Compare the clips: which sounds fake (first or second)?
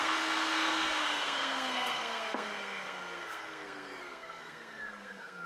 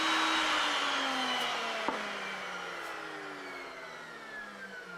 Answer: first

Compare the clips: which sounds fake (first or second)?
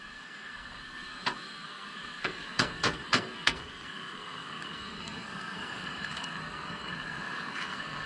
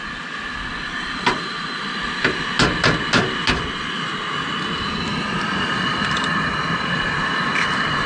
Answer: first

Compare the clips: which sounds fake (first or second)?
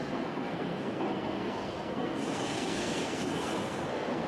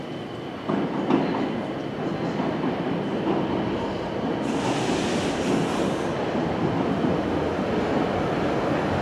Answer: first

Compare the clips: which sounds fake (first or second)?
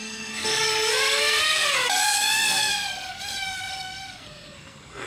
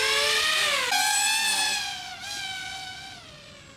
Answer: first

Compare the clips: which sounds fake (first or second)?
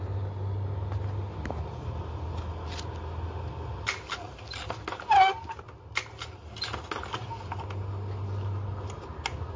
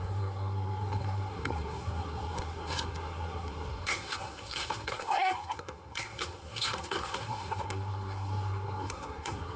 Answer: second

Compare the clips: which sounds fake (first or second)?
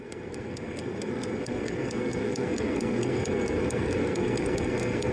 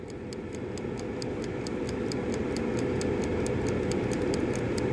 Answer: first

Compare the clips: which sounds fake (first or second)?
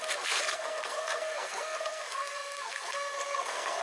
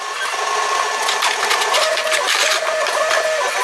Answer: first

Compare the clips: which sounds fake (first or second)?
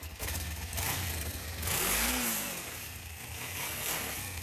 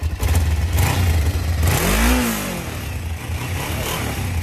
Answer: first